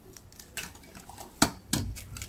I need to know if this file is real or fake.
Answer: real